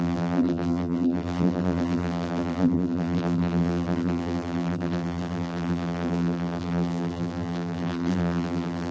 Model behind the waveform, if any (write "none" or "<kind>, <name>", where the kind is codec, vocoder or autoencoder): vocoder, BigVGAN v2